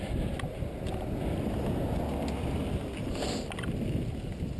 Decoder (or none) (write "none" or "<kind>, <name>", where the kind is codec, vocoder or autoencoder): none